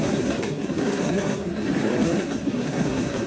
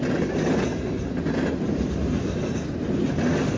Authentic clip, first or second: second